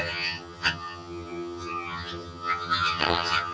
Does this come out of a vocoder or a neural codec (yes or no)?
yes